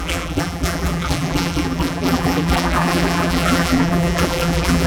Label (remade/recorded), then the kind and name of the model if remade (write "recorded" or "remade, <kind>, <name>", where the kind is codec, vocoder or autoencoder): remade, vocoder, BigVGAN v2